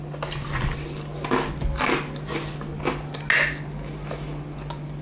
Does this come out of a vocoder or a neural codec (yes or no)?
no